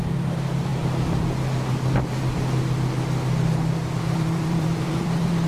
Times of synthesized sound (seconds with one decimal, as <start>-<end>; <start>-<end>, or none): 0.0-0.7; 4.0-5.5

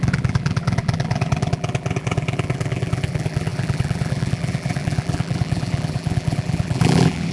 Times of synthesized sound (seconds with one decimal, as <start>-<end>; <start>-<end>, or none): 0.0-7.3

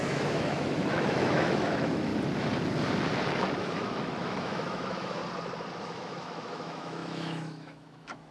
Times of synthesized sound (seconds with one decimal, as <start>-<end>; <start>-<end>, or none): 0.0-2.1; 3.6-5.2; 5.8-8.3

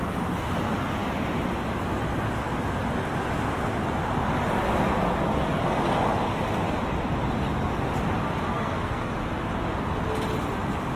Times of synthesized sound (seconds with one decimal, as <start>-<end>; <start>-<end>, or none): 8.5-9.1

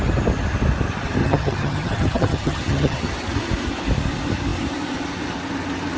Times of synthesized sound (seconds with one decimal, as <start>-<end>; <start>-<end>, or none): 1.2-3.1

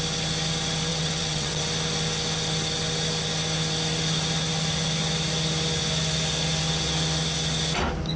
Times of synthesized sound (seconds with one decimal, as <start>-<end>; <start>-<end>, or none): 0.9-1.6

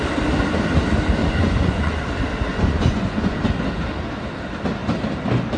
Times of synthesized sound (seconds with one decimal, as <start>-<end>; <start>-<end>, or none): 1.2-2.1; 2.5-3.4